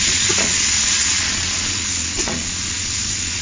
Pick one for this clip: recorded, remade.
remade